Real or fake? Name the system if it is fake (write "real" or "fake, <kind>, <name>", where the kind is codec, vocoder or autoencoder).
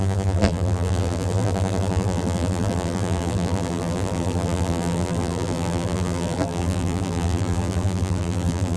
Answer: fake, vocoder, BigVGAN v2